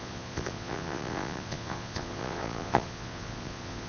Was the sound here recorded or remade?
remade